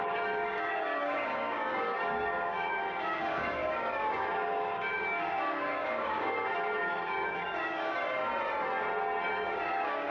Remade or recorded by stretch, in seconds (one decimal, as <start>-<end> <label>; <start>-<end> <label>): 0.0-8.3 remade; 8.3-9.3 recorded; 9.3-10.1 remade